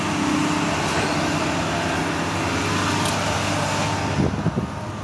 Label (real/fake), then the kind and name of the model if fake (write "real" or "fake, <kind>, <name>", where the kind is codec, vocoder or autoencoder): real